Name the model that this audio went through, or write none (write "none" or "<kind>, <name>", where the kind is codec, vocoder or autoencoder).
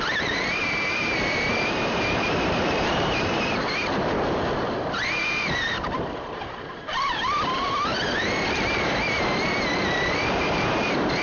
vocoder, BigVGAN v2